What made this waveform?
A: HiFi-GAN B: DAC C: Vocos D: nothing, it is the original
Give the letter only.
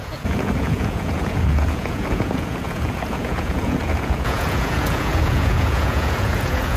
C